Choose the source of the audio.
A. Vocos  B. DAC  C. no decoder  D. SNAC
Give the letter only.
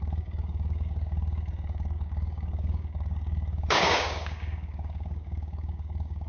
B